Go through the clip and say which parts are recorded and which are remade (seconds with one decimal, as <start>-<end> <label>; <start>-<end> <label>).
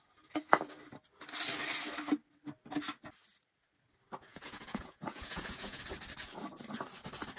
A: 0.0-4.3 recorded; 4.3-5.8 remade; 5.8-7.4 recorded